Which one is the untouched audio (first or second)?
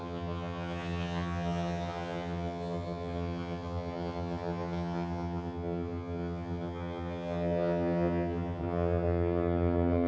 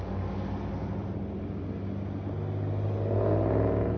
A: second